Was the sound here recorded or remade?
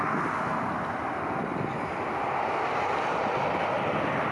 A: recorded